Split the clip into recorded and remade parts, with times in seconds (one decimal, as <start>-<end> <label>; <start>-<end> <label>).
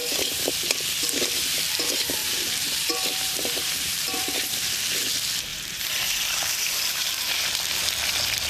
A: 0.0-0.5 remade; 0.5-2.2 recorded; 2.2-4.5 remade; 4.5-5.5 recorded; 5.5-7.5 remade; 7.5-8.5 recorded